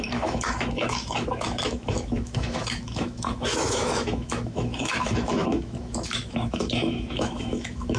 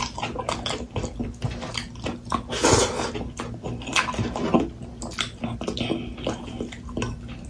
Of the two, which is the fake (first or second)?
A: first